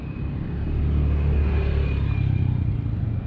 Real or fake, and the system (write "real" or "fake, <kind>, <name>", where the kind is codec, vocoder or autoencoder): real